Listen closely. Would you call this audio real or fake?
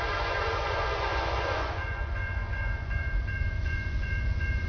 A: fake